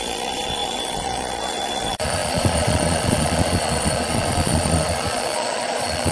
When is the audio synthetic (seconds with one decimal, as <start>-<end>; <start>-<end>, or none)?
0.0-6.1

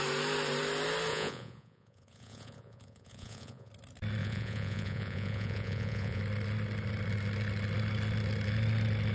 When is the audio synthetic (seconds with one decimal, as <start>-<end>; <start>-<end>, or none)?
1.1-3.7; 4.2-6.2

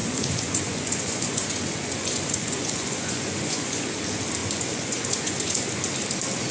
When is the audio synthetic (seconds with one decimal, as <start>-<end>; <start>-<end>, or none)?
0.0-3.9; 4.4-5.8

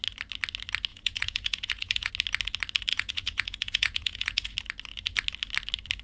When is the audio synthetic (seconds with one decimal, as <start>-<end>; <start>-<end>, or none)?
0.9-2.1; 2.9-4.5

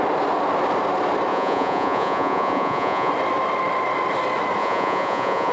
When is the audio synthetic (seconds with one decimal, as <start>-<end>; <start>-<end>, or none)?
1.3-3.1; 4.6-5.5

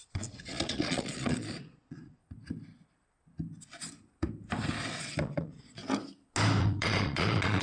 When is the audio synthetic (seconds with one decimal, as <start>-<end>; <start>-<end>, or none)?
0.0-2.2; 5.0-5.8; 6.6-7.6